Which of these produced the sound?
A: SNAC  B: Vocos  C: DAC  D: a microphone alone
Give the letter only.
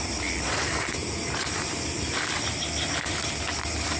D